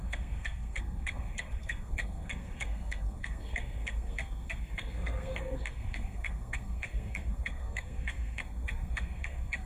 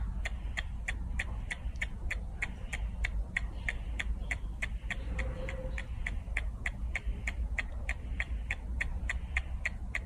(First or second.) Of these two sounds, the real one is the second